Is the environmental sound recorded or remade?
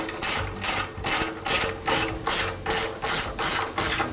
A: recorded